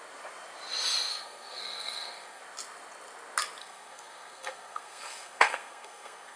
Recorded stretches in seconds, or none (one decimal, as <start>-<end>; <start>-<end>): 0.0-1.1; 2.4-3.6